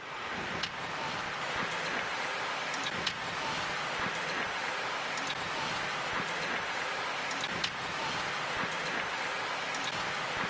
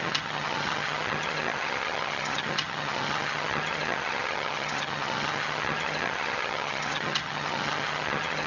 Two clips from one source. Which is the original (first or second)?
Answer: first